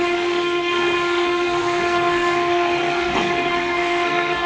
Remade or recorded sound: remade